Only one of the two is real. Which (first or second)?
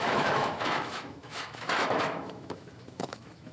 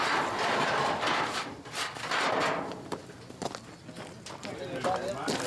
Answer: second